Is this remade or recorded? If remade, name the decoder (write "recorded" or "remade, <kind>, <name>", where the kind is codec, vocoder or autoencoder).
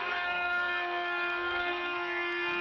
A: remade, codec, SNAC